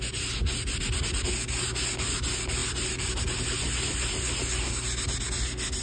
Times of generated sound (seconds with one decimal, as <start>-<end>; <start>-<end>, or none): none